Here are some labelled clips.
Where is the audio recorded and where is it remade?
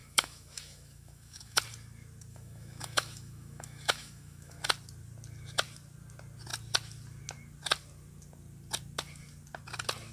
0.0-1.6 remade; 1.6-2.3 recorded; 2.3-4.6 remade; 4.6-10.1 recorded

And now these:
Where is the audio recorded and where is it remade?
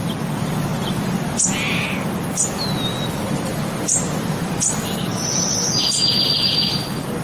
0.0-7.2 recorded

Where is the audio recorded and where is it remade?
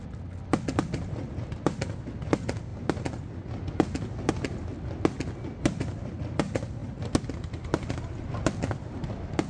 0.0-9.5 recorded